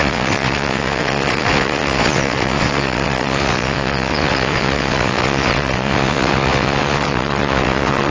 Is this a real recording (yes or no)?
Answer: no